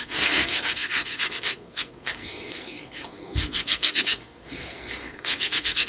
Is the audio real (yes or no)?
no